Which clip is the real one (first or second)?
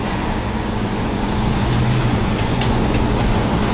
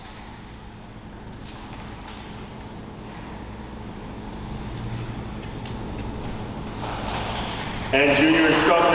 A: second